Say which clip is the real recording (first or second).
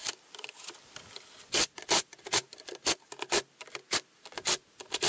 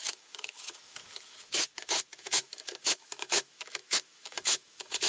first